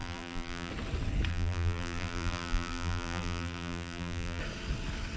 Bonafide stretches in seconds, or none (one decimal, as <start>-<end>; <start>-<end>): 0.7-1.3; 4.4-5.2